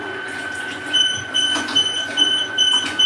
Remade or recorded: remade